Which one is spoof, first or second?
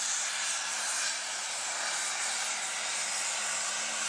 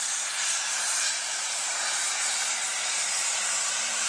second